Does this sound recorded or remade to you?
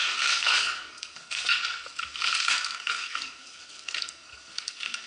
remade